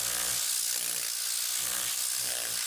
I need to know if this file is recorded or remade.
recorded